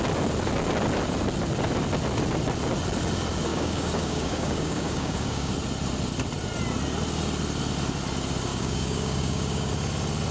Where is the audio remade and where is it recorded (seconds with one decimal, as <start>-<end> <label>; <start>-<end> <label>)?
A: 0.0-3.5 recorded; 3.5-5.5 remade; 5.5-8.5 recorded; 8.5-9.7 remade; 9.7-10.3 recorded